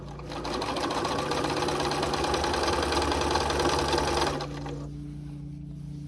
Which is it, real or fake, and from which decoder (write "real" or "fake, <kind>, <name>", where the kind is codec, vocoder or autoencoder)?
real